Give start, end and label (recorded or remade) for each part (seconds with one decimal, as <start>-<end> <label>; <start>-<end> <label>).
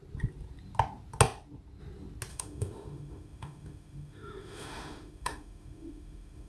0.0-2.3 recorded; 2.3-6.5 remade